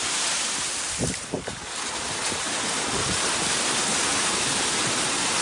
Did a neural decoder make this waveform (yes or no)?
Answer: yes